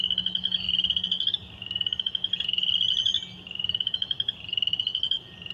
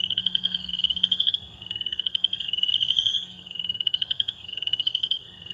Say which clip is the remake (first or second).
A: second